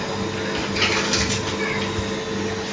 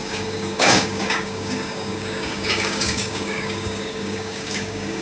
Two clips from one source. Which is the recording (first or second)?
first